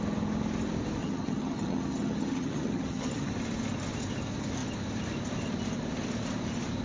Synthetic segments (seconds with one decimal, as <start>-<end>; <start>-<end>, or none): 1.0-3.3